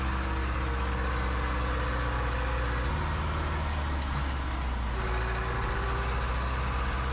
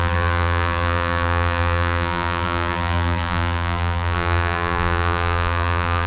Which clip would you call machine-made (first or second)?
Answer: second